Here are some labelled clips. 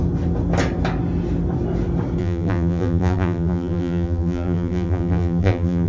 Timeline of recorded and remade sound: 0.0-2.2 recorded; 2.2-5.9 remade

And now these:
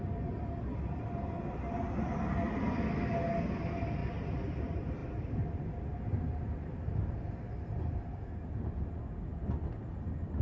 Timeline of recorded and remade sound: 0.0-10.4 recorded

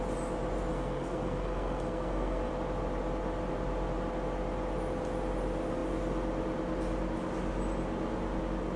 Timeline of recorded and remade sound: 0.0-0.7 recorded; 0.7-2.5 remade; 2.5-8.8 recorded

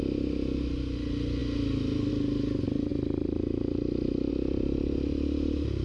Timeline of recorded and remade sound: 0.0-5.8 recorded

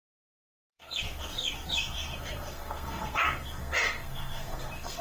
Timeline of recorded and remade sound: 0.0-5.0 remade

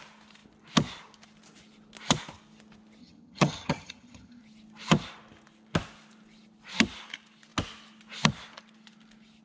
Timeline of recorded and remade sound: 0.0-3.0 recorded; 3.0-4.4 remade; 4.4-9.4 recorded

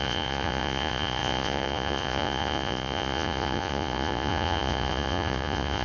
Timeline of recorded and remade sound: 0.0-5.8 remade